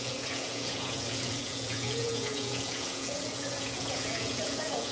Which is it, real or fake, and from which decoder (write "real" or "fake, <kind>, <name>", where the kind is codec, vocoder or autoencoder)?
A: fake, vocoder, Vocos